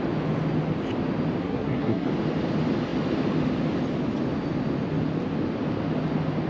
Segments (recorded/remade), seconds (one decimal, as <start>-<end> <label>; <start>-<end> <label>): 0.0-1.4 recorded; 1.4-2.1 remade; 2.1-6.5 recorded